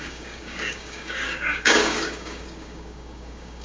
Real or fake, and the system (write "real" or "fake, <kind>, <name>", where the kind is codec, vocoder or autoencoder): fake, codec, DAC